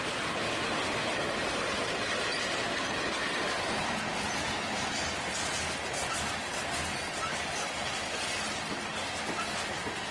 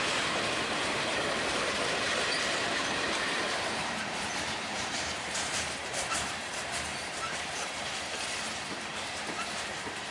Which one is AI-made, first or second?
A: second